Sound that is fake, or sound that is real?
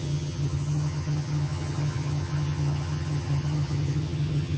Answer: fake